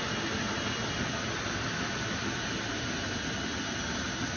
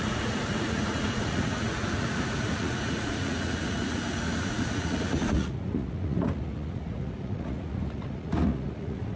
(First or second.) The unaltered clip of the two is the first